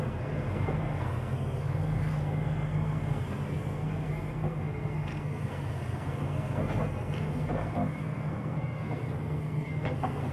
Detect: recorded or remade remade